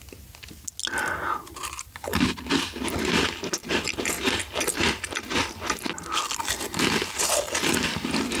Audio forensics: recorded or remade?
recorded